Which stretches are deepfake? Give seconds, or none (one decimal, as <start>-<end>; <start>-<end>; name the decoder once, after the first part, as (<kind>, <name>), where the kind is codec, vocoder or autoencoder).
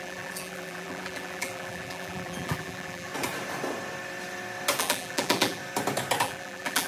0.0-3.1 (vocoder, BigVGAN v2); 4.8-5.6; 6.2-6.9